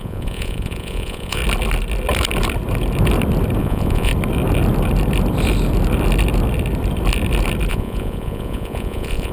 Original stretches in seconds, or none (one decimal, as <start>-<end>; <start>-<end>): 1.4-3.6; 4.1-7.7